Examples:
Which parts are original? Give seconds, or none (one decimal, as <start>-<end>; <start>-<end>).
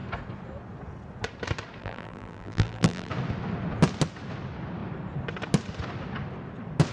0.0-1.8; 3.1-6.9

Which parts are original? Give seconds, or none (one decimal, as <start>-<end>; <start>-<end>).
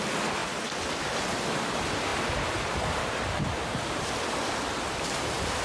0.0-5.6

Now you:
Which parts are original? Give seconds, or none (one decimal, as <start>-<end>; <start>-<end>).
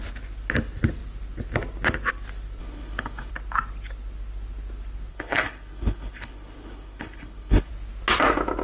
0.0-2.6; 3.3-5.1; 7.7-8.6